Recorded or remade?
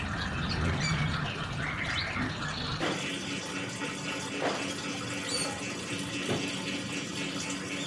recorded